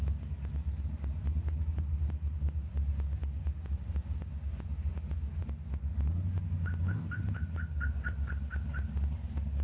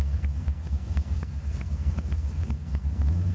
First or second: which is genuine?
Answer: first